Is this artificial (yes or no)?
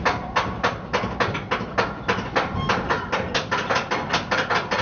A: no